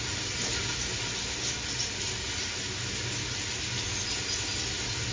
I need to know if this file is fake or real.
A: real